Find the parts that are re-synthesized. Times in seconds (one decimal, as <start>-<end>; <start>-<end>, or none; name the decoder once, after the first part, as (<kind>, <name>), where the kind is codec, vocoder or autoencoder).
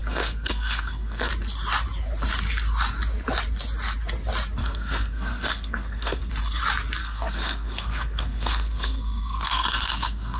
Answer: 0.0-1.3 (codec, SNAC); 4.6-6.3; 7.0-10.4